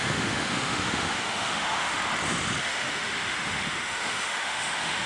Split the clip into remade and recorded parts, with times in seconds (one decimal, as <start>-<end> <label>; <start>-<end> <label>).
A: 0.0-2.0 remade; 2.0-2.6 recorded; 2.6-5.1 remade